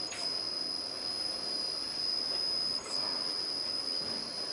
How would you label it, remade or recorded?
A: recorded